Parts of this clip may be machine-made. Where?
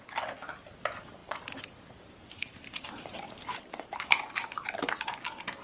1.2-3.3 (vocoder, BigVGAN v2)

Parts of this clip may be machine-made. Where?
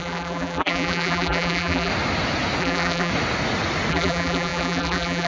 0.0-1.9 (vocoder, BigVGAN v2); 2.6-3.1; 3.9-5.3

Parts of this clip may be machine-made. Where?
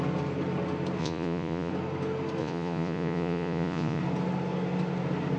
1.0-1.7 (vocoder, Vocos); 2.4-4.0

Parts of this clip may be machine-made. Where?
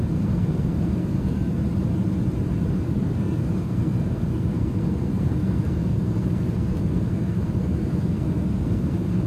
0.0-1.6 (codec, SNAC); 2.7-9.3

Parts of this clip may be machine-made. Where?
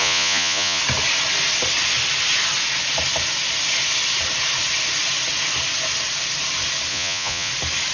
0.0-0.8 (vocoder, Vocos); 6.9-7.5